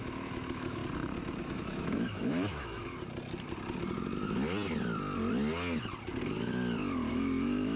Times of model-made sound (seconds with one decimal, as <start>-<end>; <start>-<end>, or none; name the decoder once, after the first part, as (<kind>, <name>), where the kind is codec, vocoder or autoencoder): 0.0-0.8 (autoencoder, DAC-VAE); 1.4-2.8; 7.1-7.8